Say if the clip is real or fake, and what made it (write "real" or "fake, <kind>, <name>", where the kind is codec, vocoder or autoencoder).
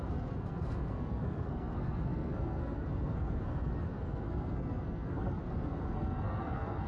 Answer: fake, codec, SNAC